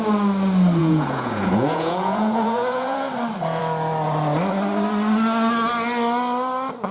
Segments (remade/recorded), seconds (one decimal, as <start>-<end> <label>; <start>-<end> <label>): 0.0-0.8 recorded; 0.8-3.1 remade; 3.1-6.9 recorded